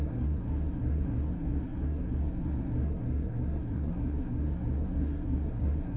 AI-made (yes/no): yes